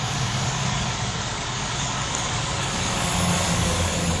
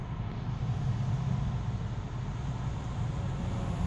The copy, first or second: first